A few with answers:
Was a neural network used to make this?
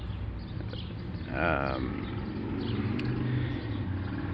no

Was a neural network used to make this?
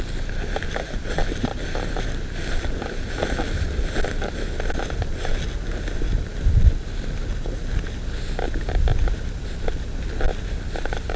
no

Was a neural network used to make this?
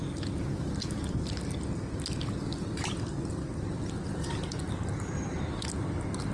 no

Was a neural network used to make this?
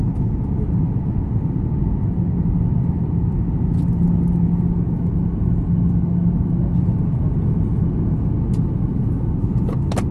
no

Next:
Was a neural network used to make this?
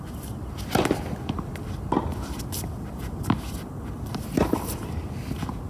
no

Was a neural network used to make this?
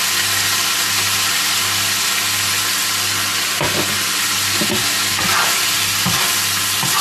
no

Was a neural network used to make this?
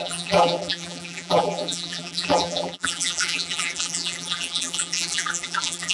yes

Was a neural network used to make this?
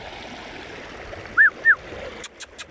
no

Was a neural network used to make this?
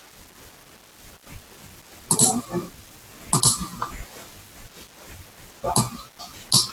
no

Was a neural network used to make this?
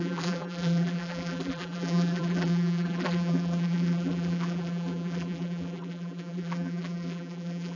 yes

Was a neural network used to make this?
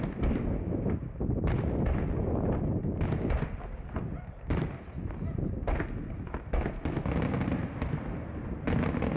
no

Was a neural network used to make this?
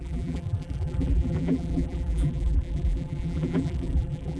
yes